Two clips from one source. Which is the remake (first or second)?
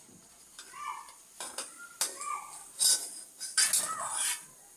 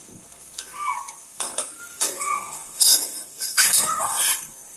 second